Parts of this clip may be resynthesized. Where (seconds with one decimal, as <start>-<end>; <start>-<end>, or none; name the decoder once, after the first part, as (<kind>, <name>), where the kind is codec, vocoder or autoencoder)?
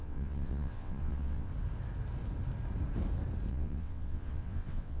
0.0-1.5 (vocoder, WaveNeXt); 3.5-5.0